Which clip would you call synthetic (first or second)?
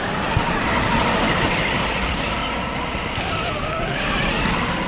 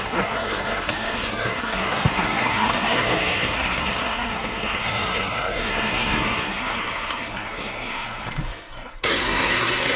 second